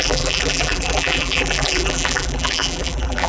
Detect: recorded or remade remade